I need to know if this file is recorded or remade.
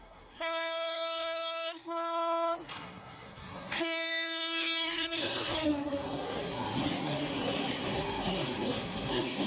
remade